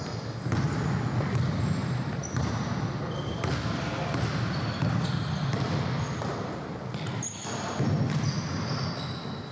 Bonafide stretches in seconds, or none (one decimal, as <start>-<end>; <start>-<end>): 0.0-1.8; 2.7-9.5